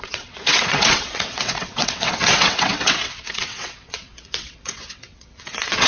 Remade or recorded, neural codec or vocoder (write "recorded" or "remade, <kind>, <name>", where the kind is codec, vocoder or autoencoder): remade, vocoder, WaveNeXt